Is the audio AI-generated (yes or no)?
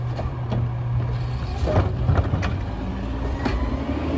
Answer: no